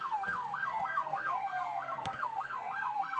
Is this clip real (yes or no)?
no